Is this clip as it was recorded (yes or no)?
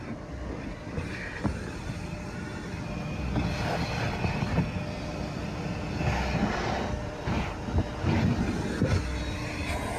yes